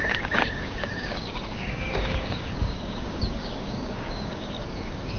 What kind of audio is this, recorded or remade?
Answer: remade